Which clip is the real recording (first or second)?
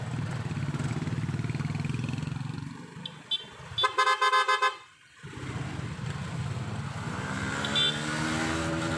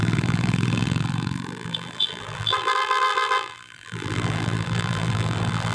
first